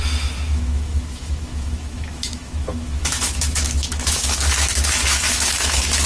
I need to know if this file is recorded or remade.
remade